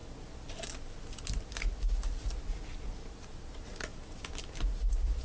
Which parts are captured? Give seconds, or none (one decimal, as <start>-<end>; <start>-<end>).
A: 0.0-3.1; 3.9-4.6